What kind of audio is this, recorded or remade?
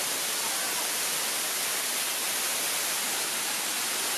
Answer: recorded